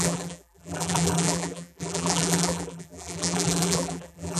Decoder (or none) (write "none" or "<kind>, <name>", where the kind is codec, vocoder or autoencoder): vocoder, BigVGAN v2